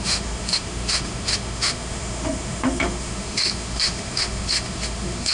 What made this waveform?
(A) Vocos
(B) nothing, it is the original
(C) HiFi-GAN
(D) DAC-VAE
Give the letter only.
D